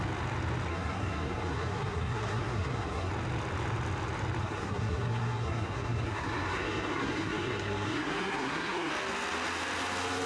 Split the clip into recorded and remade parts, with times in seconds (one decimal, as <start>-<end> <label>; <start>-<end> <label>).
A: 0.0-0.7 recorded; 0.7-3.1 remade; 3.1-4.4 recorded; 4.4-8.9 remade; 8.9-10.3 recorded